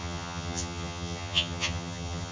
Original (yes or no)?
no